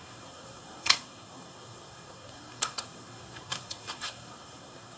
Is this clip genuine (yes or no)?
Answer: no